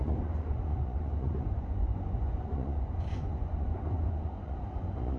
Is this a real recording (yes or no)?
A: no